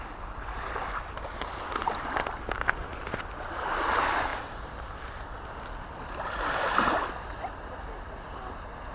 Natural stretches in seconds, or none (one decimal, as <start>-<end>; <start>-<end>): 0.0-8.9